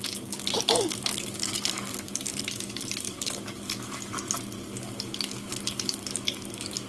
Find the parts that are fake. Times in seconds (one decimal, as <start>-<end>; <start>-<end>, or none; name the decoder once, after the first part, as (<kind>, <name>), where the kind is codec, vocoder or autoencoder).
0.0-4.1 (codec, DAC); 4.8-6.9